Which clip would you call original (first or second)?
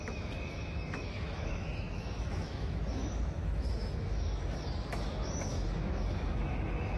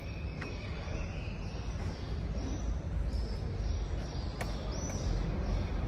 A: second